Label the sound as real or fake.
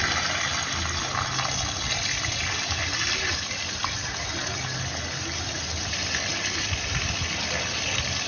real